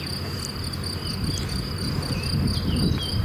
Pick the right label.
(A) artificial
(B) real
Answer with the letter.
B